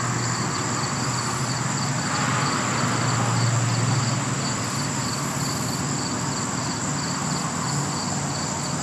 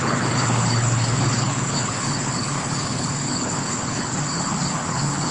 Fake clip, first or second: second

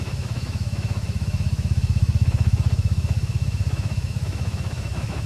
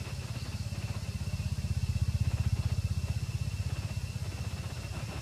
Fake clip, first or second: first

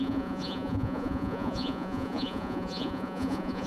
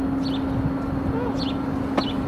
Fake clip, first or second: first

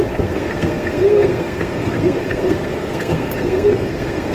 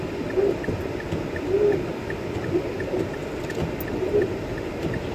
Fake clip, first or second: first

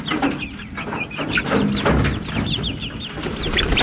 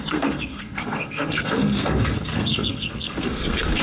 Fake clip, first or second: second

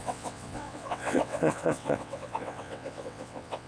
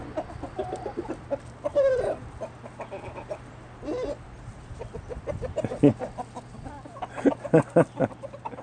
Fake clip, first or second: first